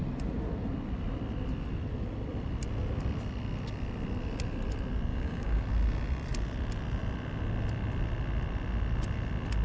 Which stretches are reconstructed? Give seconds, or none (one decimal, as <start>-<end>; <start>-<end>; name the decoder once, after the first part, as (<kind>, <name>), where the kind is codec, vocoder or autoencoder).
5.1-5.6 (codec, DAC)